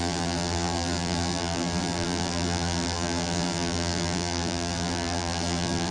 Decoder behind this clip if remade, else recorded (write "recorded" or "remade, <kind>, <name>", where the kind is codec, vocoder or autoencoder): remade, vocoder, BigVGAN v2